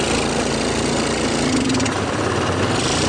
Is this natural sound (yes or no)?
yes